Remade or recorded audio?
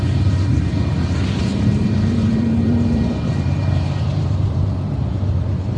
remade